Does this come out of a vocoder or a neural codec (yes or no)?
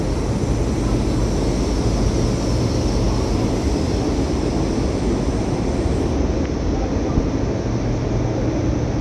no